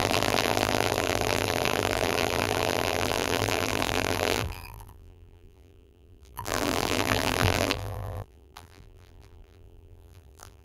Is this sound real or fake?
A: fake